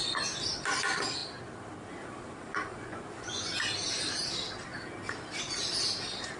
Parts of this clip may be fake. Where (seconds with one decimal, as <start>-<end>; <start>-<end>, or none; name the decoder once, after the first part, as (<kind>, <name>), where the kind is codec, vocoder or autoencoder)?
2.7-3.5 (vocoder, Vocos)